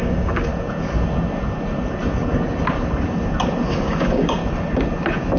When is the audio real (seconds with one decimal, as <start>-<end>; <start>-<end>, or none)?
0.5-3.7; 4.4-5.4